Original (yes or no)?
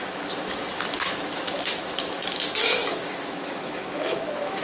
no